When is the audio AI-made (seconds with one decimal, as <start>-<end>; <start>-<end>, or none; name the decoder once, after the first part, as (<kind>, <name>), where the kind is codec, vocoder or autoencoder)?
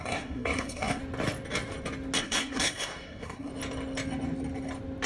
0.0-1.0 (codec, SNAC); 2.2-3.5